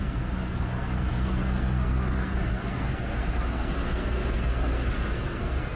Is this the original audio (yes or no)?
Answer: no